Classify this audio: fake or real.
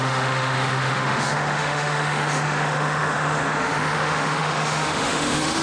fake